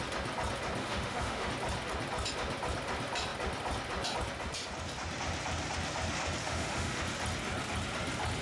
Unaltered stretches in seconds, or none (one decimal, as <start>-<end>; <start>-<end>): 0.0-0.8; 1.5-6.4; 7.0-8.4